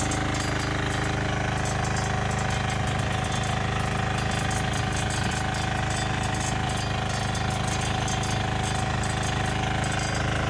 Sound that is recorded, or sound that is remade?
recorded